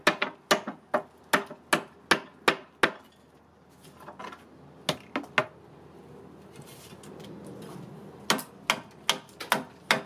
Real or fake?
real